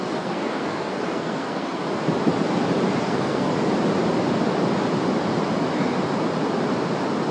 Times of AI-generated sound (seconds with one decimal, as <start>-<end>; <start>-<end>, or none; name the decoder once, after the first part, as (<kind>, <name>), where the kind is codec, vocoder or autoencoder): 0.0-1.8 (codec, SNAC); 3.0-3.5